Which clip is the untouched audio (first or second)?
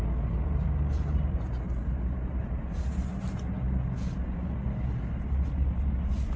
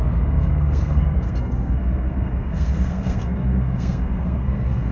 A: first